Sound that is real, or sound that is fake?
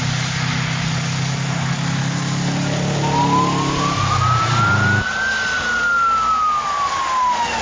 real